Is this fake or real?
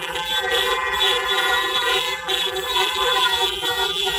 fake